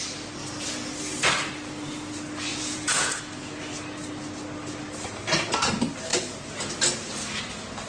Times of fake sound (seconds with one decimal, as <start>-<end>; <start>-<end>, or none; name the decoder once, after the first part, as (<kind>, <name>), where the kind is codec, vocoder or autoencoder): 2.5-3.2 (vocoder, Vocos)

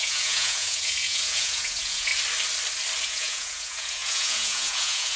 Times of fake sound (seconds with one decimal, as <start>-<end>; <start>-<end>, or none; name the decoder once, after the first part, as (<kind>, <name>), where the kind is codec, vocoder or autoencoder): 0.0-2.1 (vocoder, Vocos); 3.0-5.2

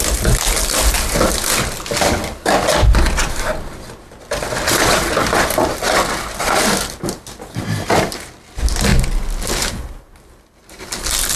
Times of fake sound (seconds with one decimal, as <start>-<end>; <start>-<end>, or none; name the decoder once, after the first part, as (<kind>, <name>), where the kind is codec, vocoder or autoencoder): none

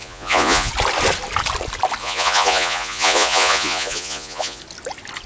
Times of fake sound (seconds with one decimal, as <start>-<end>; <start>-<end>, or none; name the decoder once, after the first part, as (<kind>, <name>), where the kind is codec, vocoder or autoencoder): 0.0-0.7 (vocoder, Vocos); 2.0-4.6